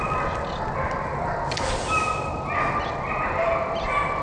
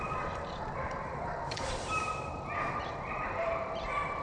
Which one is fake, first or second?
second